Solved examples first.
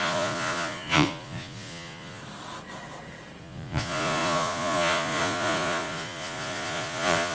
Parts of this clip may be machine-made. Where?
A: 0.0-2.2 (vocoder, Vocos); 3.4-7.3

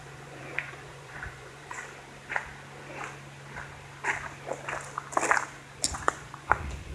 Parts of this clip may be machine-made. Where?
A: 0.0-1.8 (vocoder, Vocos); 5.9-6.9

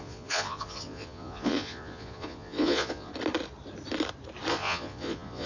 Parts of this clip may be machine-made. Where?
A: 0.0-3.1 (vocoder, Vocos); 4.5-5.5

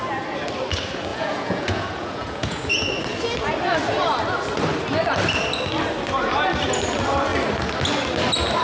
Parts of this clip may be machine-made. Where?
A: 1.1-2.7 (vocoder, Vocos)